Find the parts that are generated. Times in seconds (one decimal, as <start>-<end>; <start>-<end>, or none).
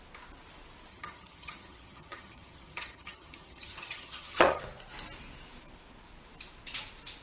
0.9-4.6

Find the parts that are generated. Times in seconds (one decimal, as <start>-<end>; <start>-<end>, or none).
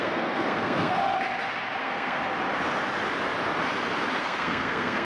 0.0-1.0; 1.8-2.2; 4.2-5.0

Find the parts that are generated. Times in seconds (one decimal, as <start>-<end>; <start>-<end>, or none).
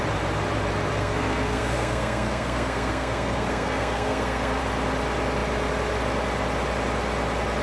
1.0-4.6